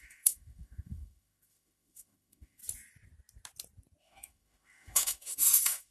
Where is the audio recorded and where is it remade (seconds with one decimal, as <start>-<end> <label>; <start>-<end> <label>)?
0.0-2.6 remade; 2.6-4.0 recorded; 4.0-5.9 remade